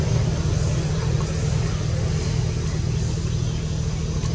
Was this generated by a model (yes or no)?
no